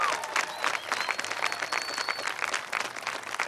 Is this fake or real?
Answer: real